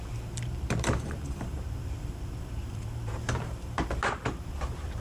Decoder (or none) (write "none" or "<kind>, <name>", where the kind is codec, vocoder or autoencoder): vocoder, BigVGAN v2